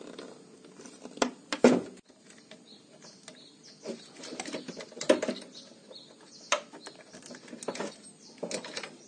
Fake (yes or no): no